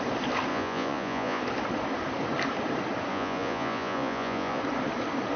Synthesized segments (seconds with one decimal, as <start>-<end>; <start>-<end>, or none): 0.5-1.4; 3.1-4.6